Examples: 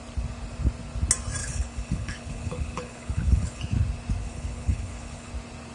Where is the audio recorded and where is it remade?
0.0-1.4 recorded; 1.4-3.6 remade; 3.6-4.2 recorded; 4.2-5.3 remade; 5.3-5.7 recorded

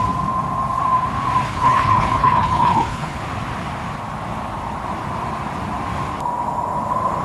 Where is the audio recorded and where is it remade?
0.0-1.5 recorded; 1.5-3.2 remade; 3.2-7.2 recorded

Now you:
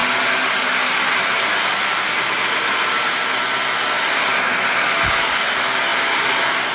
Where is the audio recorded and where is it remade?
0.0-6.7 recorded